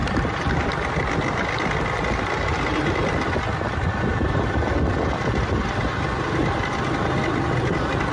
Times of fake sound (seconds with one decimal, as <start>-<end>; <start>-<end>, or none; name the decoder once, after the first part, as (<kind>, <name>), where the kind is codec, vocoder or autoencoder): 0.0-0.7 (vocoder, BigVGAN v2)

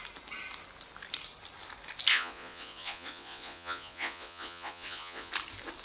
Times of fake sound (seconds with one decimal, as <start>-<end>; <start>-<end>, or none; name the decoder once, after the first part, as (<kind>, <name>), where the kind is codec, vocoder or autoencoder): 2.1-5.3 (vocoder, Vocos)

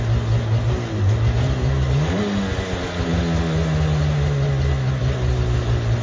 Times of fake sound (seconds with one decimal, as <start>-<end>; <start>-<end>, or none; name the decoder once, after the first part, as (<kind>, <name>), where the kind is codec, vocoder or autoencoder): none

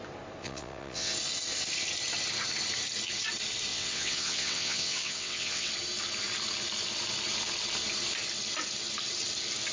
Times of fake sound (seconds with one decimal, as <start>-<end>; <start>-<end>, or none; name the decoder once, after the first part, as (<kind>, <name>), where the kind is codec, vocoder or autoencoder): 0.4-1.1 (vocoder, WaveNeXt); 3.7-5.7

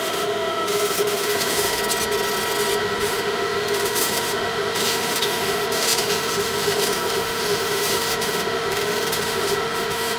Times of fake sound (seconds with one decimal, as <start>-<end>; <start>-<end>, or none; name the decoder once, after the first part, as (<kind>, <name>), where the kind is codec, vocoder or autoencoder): 0.0-1.8 (autoencoder, DAC-VAE); 2.8-10.2

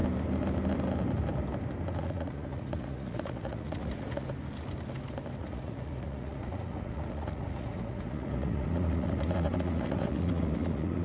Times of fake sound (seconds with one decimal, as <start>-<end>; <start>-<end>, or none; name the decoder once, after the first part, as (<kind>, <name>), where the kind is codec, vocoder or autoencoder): 2.0-4.3 (vocoder, Vocos); 5.4-11.0